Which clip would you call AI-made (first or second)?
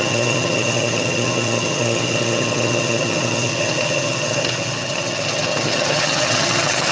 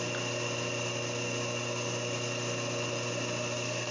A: first